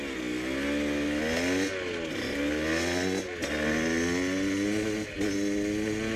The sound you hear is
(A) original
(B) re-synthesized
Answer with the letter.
A